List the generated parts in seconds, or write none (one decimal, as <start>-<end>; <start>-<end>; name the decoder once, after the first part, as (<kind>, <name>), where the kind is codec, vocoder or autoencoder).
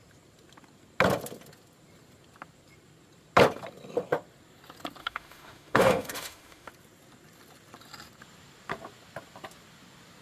5.0-6.7 (autoencoder, DAC-VAE)